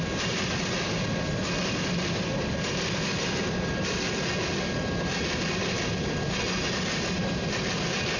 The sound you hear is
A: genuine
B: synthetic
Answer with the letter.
A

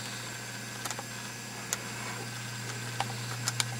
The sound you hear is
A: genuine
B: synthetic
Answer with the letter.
A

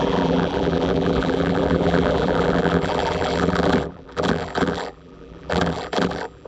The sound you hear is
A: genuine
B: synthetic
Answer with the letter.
B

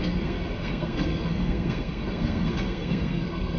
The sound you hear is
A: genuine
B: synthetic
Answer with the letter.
B